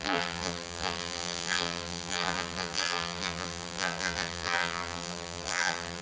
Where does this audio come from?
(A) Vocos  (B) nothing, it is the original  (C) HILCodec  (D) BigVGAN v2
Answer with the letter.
D